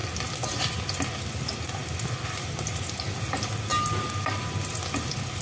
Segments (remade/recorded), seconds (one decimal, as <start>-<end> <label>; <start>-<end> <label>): 0.0-5.4 recorded